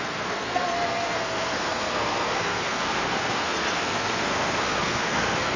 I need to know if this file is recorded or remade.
remade